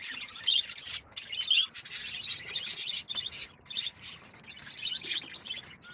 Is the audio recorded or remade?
recorded